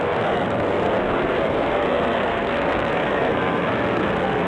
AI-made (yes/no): yes